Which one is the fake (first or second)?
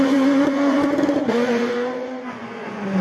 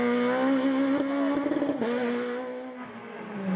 first